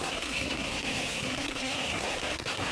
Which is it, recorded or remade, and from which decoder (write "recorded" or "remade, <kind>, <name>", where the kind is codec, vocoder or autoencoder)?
remade, codec, SNAC